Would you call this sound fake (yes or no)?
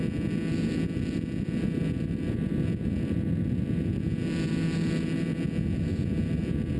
no